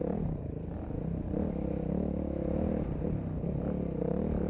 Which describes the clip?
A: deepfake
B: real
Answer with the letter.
B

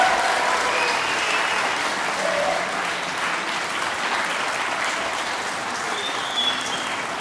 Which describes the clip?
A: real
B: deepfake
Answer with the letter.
A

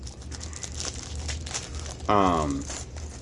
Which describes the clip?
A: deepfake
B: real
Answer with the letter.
B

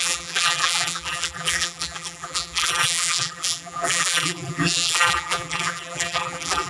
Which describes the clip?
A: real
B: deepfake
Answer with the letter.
B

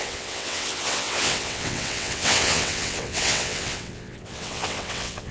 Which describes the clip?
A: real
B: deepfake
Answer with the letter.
B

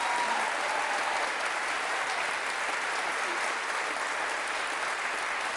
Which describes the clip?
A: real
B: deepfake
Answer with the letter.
A